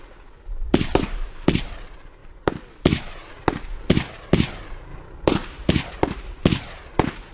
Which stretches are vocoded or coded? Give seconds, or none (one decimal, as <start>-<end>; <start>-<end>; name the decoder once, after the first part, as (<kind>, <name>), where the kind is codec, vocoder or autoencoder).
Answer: none